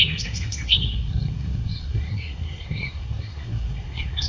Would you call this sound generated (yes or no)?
yes